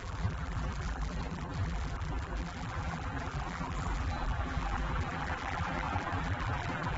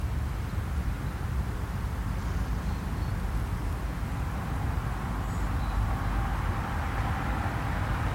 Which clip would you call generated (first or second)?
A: first